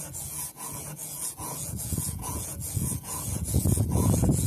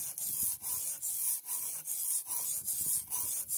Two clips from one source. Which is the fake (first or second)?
first